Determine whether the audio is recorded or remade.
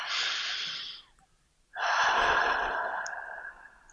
recorded